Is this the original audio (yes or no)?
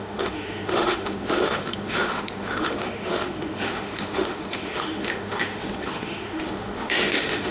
no